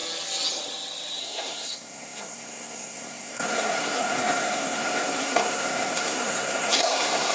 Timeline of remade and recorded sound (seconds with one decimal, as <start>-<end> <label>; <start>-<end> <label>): 0.0-1.2 recorded; 1.2-7.3 remade